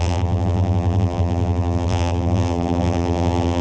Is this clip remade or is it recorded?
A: remade